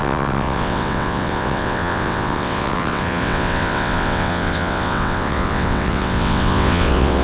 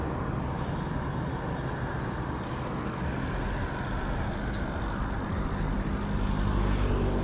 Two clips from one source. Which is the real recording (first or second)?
second